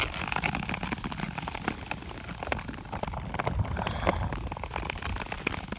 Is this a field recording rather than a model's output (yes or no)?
yes